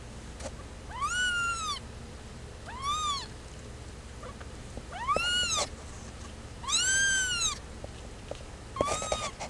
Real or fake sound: real